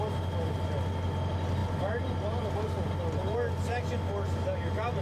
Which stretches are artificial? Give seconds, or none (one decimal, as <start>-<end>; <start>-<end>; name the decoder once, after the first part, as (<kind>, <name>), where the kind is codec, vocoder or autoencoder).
none